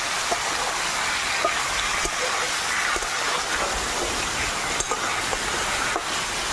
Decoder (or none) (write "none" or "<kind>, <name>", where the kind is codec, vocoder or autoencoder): none